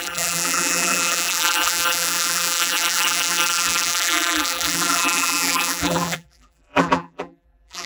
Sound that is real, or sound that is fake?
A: fake